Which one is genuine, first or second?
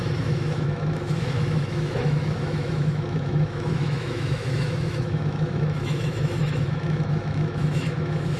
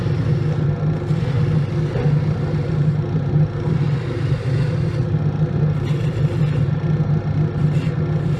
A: second